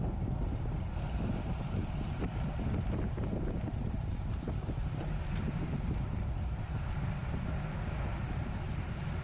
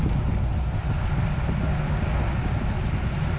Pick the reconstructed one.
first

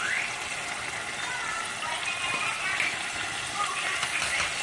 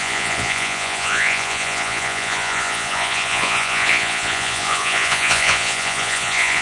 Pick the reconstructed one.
second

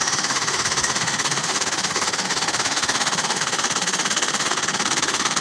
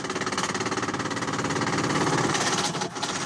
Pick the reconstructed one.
first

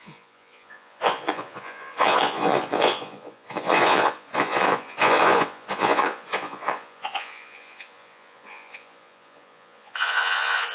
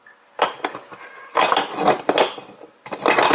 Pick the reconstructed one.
first